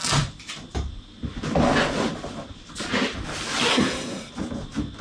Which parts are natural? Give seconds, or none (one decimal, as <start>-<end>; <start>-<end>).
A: 0.0-3.7; 4.3-5.0